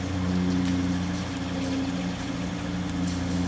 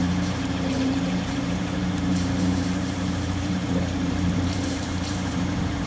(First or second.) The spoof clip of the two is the second